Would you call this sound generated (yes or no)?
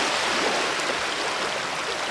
no